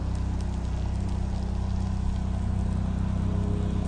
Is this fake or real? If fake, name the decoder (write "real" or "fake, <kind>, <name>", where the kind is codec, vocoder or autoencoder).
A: real